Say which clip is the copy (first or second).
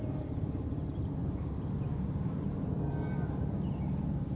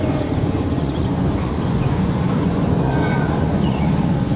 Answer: second